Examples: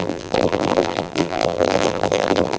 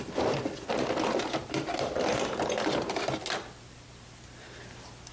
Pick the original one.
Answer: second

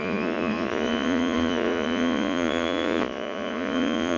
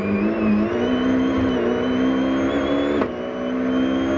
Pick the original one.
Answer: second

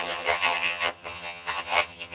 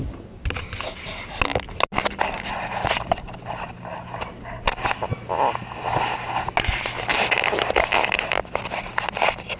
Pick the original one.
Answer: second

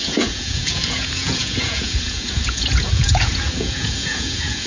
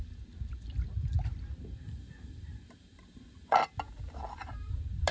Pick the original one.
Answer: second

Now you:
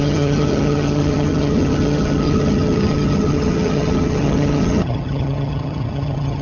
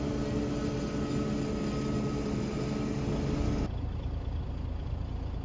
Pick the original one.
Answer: second